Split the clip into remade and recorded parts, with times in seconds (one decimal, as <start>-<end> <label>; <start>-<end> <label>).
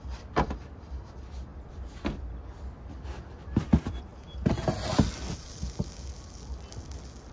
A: 0.0-7.3 recorded